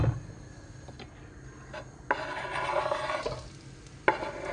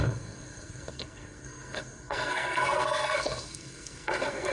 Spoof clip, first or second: second